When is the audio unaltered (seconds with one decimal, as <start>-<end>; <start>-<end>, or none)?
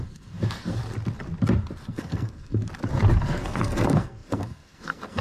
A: 0.8-1.9; 2.6-3.2